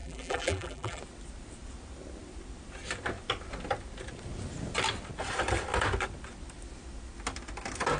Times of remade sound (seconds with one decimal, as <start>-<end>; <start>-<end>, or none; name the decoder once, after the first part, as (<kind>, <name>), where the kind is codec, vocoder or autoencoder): 0.0-1.0 (vocoder, BigVGAN v2)

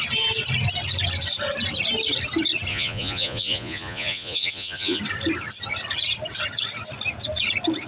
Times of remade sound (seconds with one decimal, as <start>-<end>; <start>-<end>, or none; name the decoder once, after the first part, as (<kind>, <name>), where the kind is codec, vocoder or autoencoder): 2.7-5.0 (vocoder, Vocos)

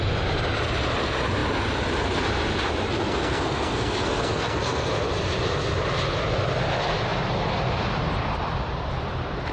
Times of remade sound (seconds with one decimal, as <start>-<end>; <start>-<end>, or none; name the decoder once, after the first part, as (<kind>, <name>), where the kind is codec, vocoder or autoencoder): 2.9-4.9 (codec, SNAC)

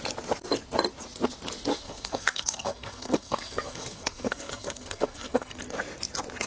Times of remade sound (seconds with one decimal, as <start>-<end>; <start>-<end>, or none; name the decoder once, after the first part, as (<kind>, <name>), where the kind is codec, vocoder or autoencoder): 1.7-5.6 (codec, SNAC)

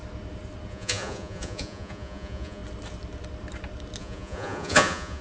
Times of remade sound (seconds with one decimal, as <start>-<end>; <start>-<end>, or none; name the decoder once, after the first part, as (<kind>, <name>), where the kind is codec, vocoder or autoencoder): 0.7-2.6 (vocoder, Vocos); 4.0-5.2